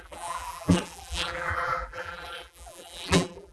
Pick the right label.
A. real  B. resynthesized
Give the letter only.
B